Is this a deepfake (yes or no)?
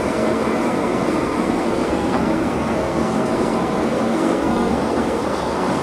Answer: yes